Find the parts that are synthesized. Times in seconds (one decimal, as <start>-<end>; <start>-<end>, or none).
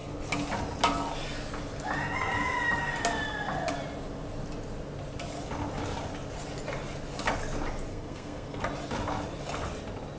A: 7.9-8.6